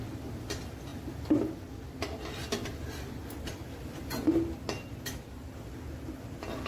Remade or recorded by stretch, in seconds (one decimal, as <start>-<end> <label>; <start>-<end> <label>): 0.0-6.7 recorded